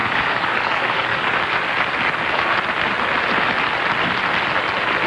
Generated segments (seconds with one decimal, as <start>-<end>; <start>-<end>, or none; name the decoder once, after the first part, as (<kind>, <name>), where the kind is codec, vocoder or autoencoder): 0.0-1.4 (codec, DAC)